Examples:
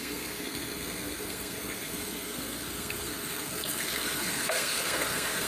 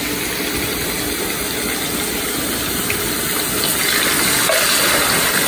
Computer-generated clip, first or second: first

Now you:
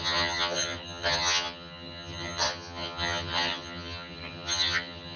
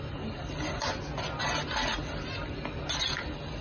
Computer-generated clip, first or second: first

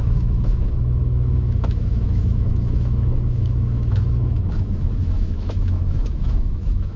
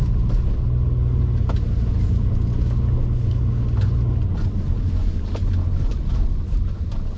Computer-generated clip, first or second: first